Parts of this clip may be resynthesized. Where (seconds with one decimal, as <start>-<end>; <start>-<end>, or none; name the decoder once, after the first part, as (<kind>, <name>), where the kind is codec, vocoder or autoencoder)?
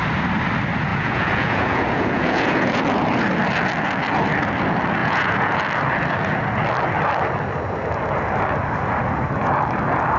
0.9-2.8 (vocoder, Vocos); 5.0-5.6